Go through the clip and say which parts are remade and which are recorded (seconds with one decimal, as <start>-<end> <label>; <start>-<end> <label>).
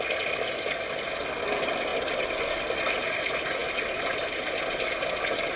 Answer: 0.0-5.6 recorded